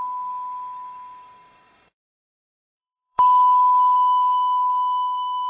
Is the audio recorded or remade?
remade